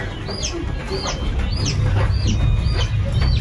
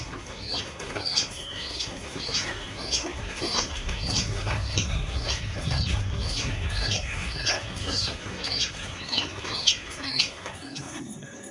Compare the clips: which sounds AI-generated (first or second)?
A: second